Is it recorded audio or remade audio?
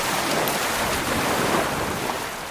recorded